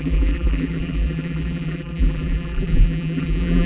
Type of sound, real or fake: fake